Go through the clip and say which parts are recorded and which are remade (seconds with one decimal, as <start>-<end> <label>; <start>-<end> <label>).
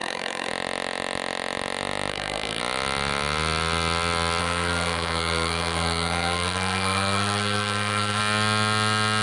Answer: 0.0-0.5 remade; 0.5-2.1 recorded; 2.1-2.6 remade; 2.6-4.4 recorded; 4.4-8.2 remade; 8.2-9.2 recorded